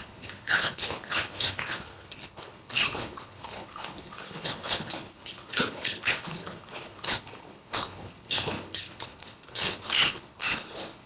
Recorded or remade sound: remade